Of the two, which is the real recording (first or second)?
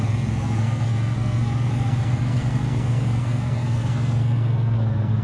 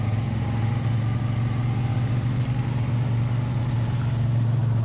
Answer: second